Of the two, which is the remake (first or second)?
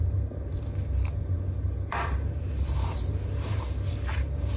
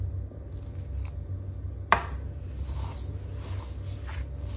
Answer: first